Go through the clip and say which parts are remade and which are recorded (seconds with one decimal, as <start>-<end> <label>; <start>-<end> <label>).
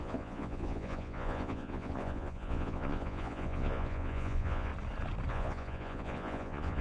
0.0-4.7 remade; 4.7-5.3 recorded; 5.3-6.8 remade